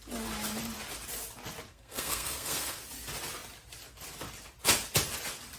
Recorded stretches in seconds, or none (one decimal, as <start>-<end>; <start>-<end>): 0.0-1.7; 2.8-5.6